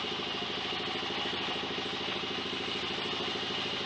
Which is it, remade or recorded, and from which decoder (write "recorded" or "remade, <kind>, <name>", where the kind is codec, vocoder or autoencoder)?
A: recorded